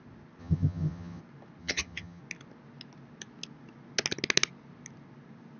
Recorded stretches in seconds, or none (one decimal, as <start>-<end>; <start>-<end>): 0.0-0.4; 1.2-1.6; 2.2-5.6